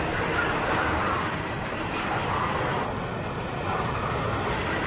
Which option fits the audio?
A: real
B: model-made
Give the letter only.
A